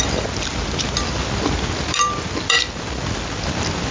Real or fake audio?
real